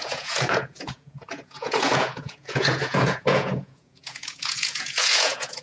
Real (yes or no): no